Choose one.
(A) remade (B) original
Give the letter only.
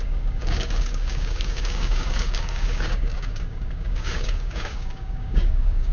A